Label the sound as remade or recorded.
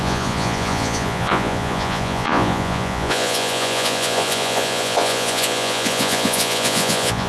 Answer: remade